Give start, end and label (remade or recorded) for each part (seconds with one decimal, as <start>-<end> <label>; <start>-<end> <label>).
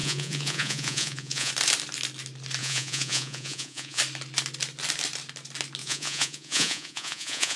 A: 0.0-1.5 remade; 1.5-2.6 recorded; 2.6-4.0 remade; 4.0-5.8 recorded; 5.8-7.6 remade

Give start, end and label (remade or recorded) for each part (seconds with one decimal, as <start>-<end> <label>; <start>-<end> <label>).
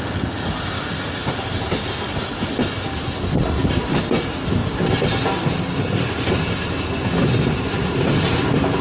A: 0.0-8.8 recorded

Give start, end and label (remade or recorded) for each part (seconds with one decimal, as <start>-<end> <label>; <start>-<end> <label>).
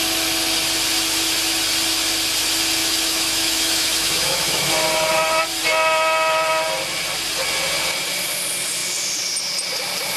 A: 0.0-2.8 recorded; 2.8-4.7 remade; 4.7-10.2 recorded